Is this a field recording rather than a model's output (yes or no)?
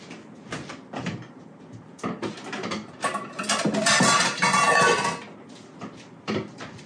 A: yes